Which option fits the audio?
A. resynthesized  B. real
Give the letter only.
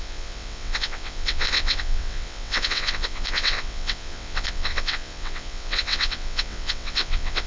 A